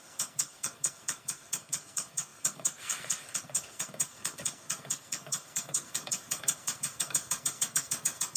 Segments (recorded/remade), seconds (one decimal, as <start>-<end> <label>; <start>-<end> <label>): 0.0-8.4 remade